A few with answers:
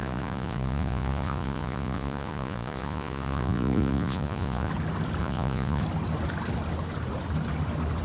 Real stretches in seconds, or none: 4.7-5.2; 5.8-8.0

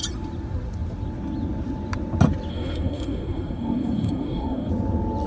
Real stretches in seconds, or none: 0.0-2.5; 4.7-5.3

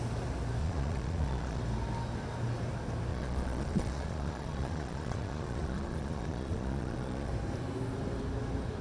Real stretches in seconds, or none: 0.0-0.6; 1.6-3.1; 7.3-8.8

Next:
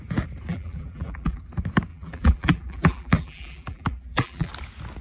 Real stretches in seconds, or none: 0.0-0.5; 1.4-1.9; 4.5-5.0

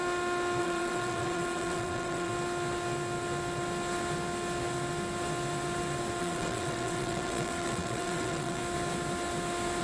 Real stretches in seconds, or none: 0.0-0.6; 2.3-6.2; 8.6-9.8

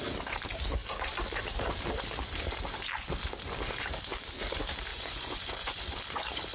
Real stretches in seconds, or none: 0.0-4.9; 5.8-6.5